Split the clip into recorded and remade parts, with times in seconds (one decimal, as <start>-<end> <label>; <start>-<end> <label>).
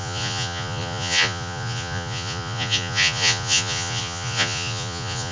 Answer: 0.0-5.3 remade